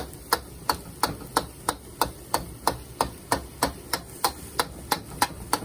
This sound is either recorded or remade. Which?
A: recorded